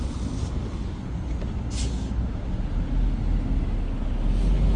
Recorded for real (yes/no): yes